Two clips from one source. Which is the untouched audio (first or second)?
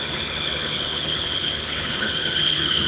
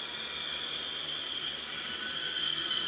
second